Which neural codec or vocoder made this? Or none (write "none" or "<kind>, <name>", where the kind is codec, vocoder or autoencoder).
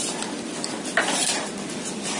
none